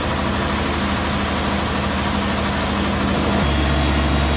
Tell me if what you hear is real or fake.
real